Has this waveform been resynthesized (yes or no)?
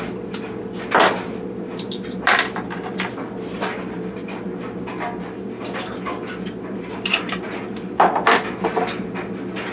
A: no